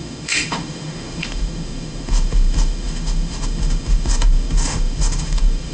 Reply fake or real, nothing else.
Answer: fake